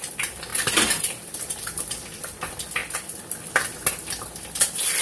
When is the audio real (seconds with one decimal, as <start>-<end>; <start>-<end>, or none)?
0.0-0.5; 1.9-5.0